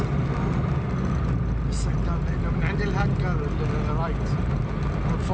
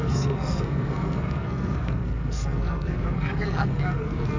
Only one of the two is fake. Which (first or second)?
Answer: second